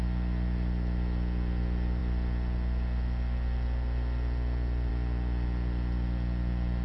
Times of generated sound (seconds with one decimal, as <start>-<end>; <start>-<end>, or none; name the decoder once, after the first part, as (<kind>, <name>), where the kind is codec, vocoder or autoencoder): none